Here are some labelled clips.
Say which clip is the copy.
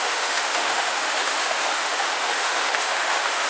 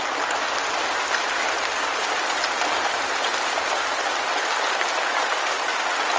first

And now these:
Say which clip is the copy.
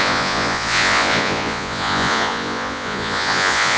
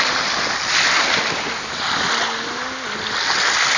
first